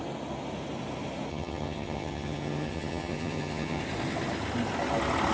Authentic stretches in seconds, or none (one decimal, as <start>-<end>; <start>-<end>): 0.0-1.3; 3.8-5.3